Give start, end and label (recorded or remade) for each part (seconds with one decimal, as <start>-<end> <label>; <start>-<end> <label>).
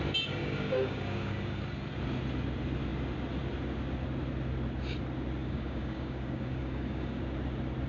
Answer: 0.0-0.4 recorded; 0.4-1.6 remade; 1.6-5.4 recorded; 5.4-7.2 remade; 7.2-7.9 recorded